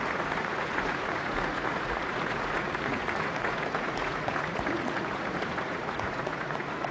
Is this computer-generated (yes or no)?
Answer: yes